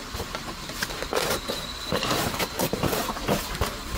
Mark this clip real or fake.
fake